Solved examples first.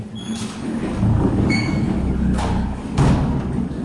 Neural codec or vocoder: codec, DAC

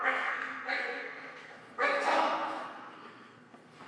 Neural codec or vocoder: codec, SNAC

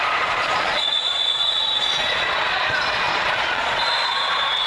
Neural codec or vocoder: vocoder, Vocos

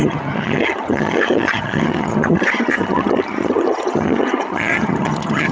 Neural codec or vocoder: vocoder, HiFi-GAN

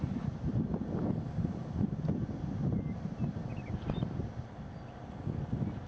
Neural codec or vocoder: none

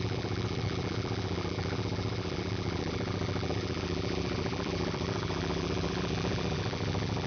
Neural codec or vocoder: vocoder, BigVGAN v2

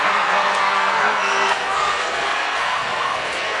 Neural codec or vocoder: codec, SNAC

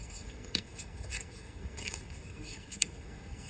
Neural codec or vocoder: codec, SNAC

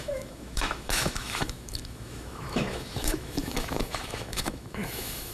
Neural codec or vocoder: autoencoder, DAC-VAE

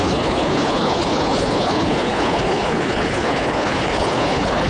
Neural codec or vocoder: codec, HILCodec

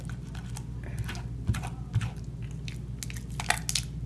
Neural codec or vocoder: none